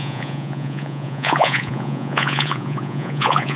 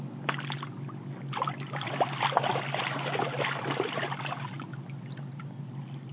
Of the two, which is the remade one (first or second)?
first